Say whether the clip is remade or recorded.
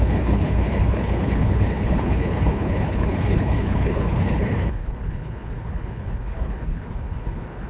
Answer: remade